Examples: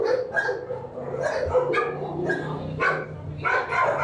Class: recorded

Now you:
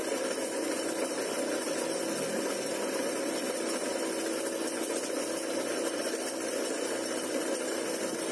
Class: recorded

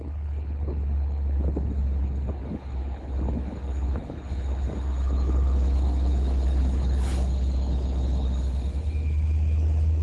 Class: remade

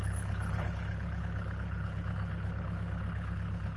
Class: remade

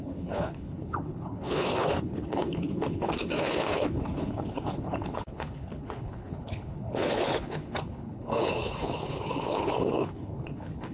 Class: remade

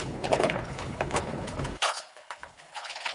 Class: remade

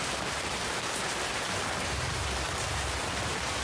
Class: recorded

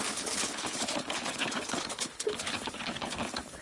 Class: remade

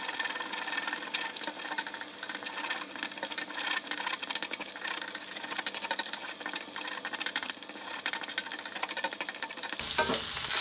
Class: recorded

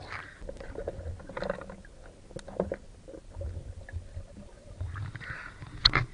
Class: recorded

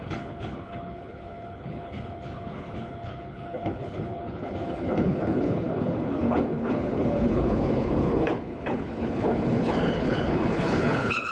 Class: remade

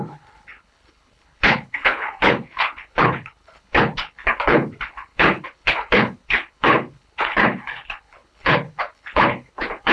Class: remade